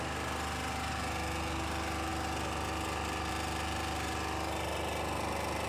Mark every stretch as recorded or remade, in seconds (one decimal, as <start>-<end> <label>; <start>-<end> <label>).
0.0-5.7 recorded